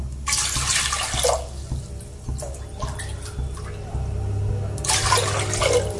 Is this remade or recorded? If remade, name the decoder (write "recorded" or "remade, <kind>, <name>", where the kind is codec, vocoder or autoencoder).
recorded